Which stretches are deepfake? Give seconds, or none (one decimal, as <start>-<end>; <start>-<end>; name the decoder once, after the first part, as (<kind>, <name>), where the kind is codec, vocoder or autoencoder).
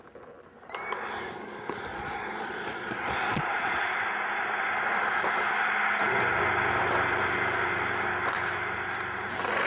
1.9-3.8 (vocoder, Vocos)